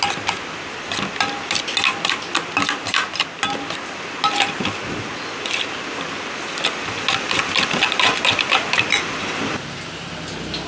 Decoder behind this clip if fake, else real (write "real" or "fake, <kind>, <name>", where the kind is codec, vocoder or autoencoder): real